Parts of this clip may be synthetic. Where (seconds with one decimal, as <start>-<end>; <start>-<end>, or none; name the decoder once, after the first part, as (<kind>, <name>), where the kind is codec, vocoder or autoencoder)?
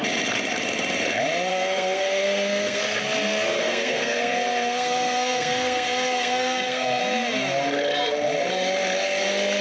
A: 1.5-2.8 (codec, SNAC); 3.5-7.0